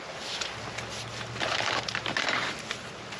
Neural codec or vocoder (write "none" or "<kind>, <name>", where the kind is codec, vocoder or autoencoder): none